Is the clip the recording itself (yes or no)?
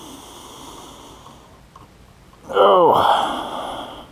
yes